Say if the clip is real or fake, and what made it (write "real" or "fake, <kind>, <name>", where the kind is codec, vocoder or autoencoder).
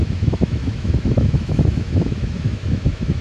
fake, autoencoder, DAC-VAE